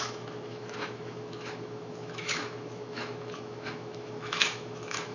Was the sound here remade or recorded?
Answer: remade